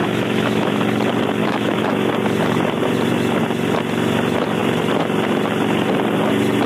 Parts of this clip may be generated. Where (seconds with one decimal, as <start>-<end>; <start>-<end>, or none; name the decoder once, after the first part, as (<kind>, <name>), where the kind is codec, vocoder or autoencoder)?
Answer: 0.0-0.8 (autoencoder, DAC-VAE); 1.4-2.1